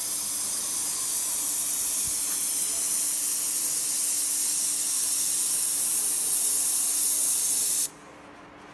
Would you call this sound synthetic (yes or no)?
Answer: no